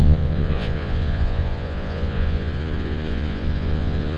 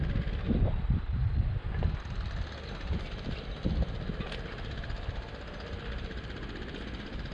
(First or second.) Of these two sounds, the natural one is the second